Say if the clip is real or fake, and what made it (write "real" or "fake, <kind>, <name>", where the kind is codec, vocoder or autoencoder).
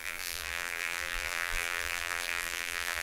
fake, vocoder, BigVGAN v2